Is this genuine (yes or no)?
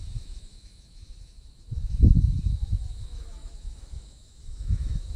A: no